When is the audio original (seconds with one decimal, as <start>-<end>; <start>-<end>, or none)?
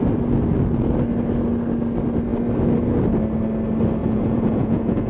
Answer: 0.0-4.0